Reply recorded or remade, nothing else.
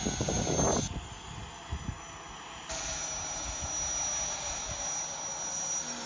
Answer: recorded